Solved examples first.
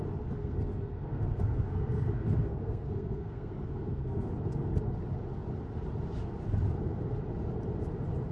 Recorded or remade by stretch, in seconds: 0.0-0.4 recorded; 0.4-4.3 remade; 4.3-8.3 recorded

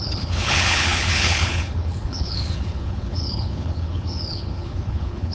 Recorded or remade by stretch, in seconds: 0.0-5.3 remade

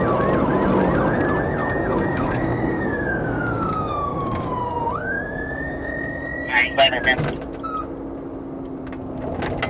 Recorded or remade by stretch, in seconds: 0.0-1.6 recorded; 1.6-6.2 remade; 6.2-9.7 recorded

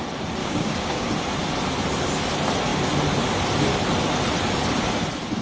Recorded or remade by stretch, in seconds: 0.0-0.4 recorded; 0.4-1.1 remade; 1.1-5.4 recorded

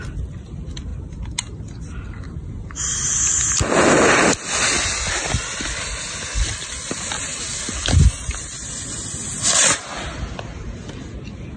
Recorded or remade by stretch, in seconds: 0.0-11.6 recorded

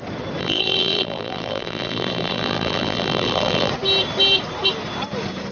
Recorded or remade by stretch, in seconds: 0.0-0.4 recorded; 0.4-3.7 remade; 3.7-5.5 recorded